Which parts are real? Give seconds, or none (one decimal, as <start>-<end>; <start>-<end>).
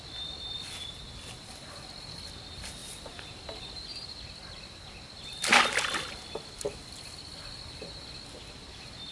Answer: 0.0-9.1